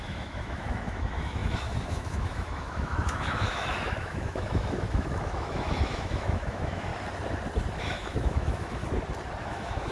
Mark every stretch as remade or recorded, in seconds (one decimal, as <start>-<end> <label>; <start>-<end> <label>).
0.0-6.9 remade; 6.9-7.8 recorded; 7.8-8.8 remade; 8.8-9.4 recorded; 9.4-9.9 remade

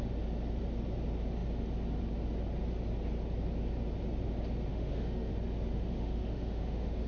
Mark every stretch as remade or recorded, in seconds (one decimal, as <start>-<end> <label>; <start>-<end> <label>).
0.0-4.7 recorded; 4.7-5.3 remade; 5.3-5.7 recorded; 5.7-7.1 remade